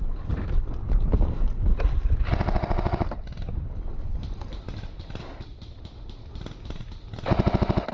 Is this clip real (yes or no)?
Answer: yes